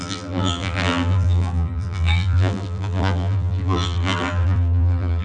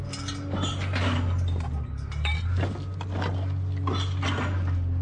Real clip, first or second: second